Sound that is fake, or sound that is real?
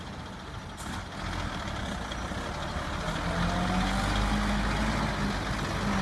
real